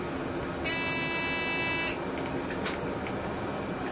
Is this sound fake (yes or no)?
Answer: no